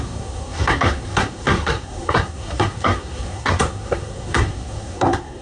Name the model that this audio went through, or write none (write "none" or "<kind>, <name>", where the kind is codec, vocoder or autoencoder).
codec, SNAC